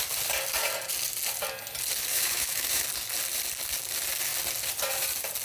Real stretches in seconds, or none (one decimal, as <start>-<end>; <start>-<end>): 0.0-2.1; 2.8-5.4